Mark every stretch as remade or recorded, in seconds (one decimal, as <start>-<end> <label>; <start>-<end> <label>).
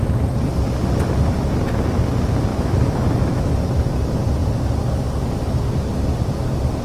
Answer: 0.0-2.5 recorded; 2.5-3.5 remade; 3.5-6.8 recorded